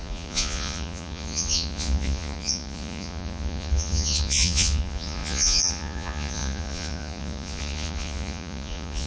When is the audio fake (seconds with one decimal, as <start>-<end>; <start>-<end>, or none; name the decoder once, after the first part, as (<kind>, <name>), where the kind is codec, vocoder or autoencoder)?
0.0-9.1 (vocoder, Vocos)